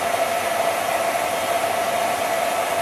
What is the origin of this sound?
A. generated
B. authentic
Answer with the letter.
B